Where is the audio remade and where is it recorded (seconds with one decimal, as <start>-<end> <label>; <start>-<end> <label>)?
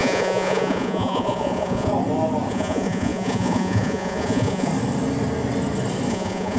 0.0-1.9 remade; 1.9-2.5 recorded; 2.5-4.7 remade; 4.7-6.1 recorded; 6.1-6.6 remade